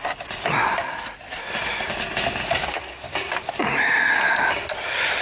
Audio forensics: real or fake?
fake